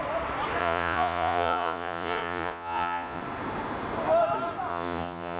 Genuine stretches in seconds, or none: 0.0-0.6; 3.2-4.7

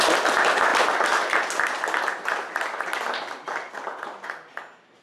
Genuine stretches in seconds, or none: 0.0-5.0

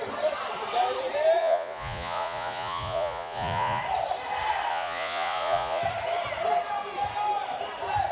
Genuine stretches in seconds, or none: 0.0-1.4; 3.8-4.7; 5.8-8.1

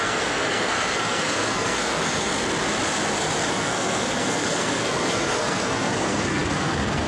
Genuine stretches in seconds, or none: 2.3-3.5